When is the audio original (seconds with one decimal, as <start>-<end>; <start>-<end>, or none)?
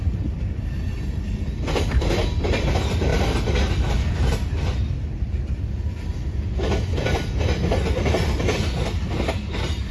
0.0-9.9